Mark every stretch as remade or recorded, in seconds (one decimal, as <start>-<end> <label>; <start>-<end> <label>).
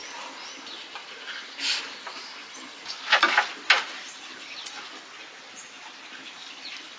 0.0-7.0 recorded